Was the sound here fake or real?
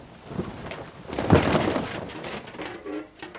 real